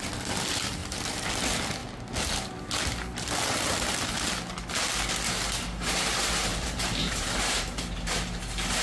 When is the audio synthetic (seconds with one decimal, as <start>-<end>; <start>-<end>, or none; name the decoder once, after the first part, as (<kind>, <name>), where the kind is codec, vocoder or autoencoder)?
6.5-8.4 (vocoder, BigVGAN v2)